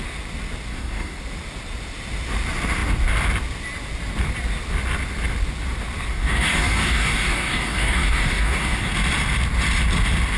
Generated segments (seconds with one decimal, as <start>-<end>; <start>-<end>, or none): 0.7-1.2; 6.1-8.9